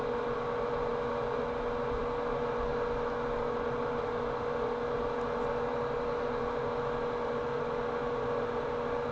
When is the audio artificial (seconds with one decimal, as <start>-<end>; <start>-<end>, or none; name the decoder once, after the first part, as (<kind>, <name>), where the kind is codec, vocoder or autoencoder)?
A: none